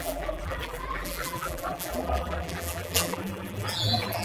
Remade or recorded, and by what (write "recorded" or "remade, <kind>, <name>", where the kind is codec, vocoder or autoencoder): remade, vocoder, BigVGAN v2